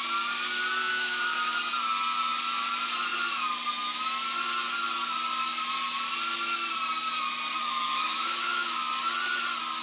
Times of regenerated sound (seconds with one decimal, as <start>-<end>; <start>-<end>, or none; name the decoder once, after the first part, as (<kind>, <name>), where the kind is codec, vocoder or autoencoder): 0.8-1.6 (autoencoder, DAC-VAE); 7.6-8.8

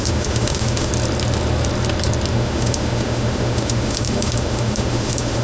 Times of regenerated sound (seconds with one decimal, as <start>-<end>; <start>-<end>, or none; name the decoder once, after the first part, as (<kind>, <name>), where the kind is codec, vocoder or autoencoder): 0.0-0.9 (autoencoder, DAC-VAE); 2.3-5.4

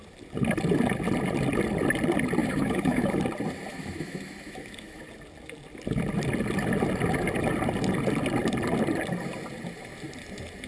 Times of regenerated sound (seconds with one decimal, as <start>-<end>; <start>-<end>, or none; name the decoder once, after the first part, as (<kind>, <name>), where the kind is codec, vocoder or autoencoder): 2.4-3.2 (autoencoder, DAC-VAE); 3.7-5.0

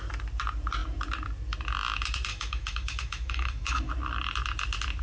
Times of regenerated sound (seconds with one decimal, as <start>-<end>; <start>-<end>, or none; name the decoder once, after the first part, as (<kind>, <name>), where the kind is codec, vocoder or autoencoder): 2.3-3.9 (autoencoder, DAC-VAE)

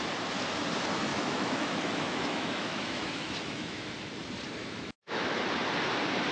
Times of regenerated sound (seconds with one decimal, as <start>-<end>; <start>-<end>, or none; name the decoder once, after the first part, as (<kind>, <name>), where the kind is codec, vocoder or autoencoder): 1.1-3.8 (autoencoder, DAC-VAE); 4.6-5.4

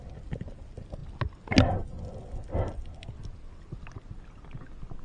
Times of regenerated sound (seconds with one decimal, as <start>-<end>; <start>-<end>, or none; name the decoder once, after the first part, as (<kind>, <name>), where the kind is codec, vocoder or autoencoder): none

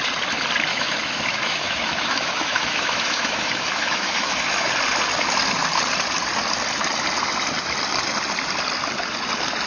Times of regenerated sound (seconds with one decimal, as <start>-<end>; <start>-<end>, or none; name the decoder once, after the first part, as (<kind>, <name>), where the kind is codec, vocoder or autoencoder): 0.7-4.7 (autoencoder, DAC-VAE)

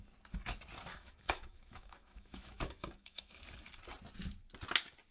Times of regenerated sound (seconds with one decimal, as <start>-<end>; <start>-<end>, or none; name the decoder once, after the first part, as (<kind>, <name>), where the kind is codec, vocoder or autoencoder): 0.9-3.4 (autoencoder, DAC-VAE)